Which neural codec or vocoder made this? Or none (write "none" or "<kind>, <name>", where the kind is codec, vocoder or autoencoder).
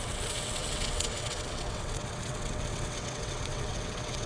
vocoder, WaveNeXt